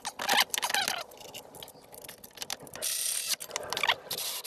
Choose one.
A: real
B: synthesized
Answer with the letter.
A